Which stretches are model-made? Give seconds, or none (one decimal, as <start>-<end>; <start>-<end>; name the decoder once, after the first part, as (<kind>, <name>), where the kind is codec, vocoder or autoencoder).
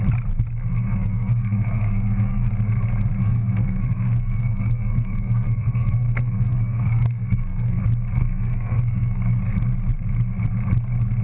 0.7-2.5 (codec, SNAC); 3.2-7.8; 8.2-9.4